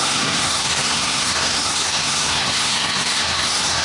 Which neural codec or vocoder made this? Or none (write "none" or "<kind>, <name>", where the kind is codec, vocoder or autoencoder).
codec, SNAC